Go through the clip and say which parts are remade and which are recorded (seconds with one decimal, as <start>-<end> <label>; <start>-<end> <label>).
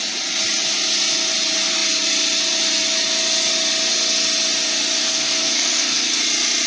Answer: 0.0-5.0 recorded; 5.0-6.2 remade; 6.2-6.7 recorded